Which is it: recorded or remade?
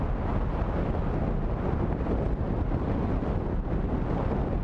recorded